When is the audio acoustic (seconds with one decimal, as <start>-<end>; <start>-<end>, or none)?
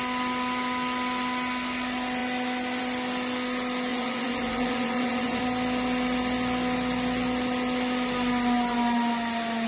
0.0-3.9; 5.4-9.7